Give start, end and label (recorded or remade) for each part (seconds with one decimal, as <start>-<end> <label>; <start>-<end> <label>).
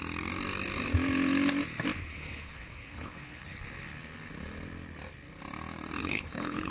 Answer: 0.0-2.0 recorded; 2.0-3.6 remade; 3.6-6.0 recorded; 6.0-6.7 remade